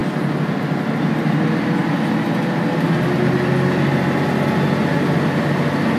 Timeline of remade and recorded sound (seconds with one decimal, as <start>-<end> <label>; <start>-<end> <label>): 0.0-6.0 recorded